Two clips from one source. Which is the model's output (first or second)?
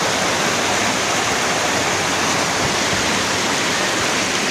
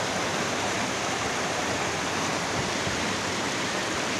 second